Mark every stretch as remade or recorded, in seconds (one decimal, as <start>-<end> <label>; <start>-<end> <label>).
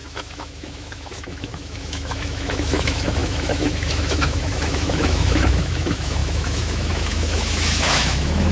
0.0-8.5 remade